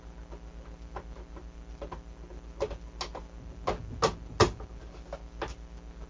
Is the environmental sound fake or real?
real